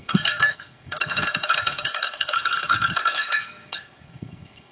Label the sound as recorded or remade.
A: remade